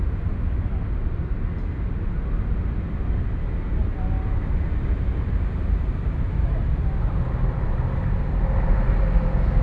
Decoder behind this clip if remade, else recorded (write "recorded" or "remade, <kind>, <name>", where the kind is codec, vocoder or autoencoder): recorded